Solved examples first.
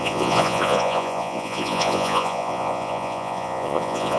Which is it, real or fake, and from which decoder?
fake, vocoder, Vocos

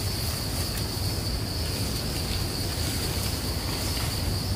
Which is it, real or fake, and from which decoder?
real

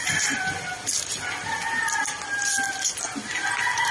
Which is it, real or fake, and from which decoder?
real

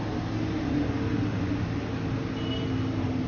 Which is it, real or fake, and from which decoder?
real